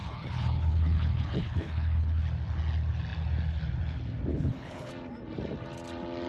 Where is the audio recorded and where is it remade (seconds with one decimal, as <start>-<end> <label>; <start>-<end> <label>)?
0.0-2.2 remade; 2.2-4.3 recorded; 4.3-4.9 remade; 4.9-6.3 recorded